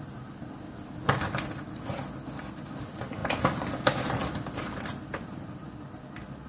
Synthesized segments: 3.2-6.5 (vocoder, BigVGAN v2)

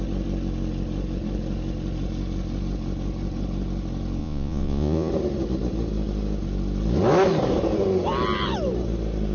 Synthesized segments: 4.2-5.1 (vocoder, Vocos)

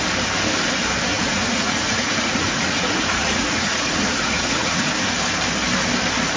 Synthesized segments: 1.1-4.9 (vocoder, Vocos)

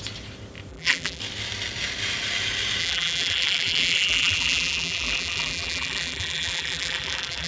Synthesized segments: 0.7-1.2 (vocoder, BigVGAN v2); 2.8-7.5

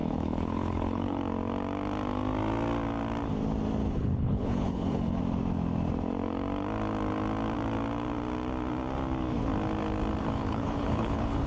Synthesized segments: 0.0-1.2 (codec, HILCodec); 3.8-5.2; 10.2-11.5